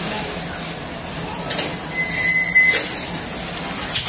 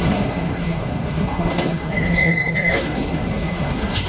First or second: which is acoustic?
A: first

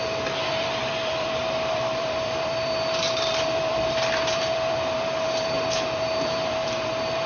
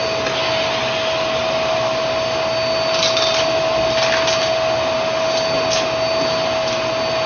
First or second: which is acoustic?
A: second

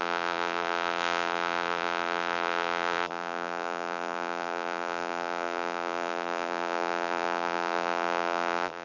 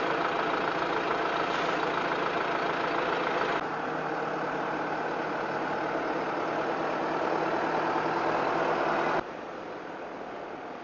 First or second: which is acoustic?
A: second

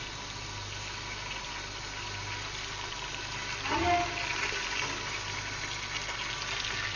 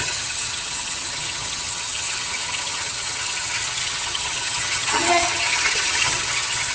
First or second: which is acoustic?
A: first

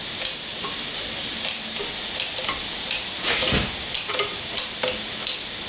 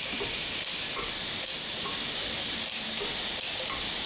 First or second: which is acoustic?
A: first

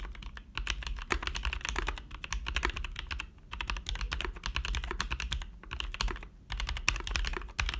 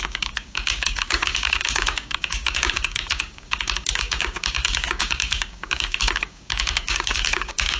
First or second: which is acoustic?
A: first